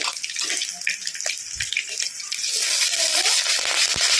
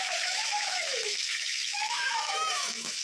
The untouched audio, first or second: first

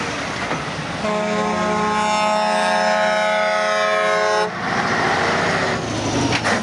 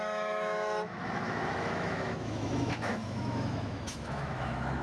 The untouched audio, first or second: first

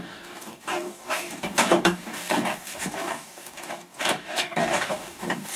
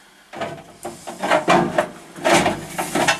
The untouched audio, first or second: second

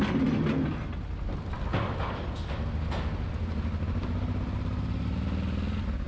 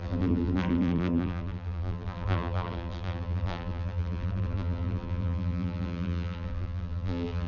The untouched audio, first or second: first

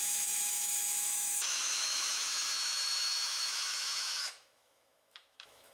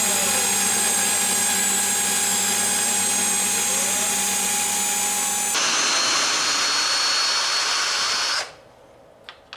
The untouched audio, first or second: second